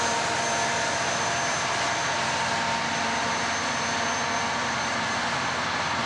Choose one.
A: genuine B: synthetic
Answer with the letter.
A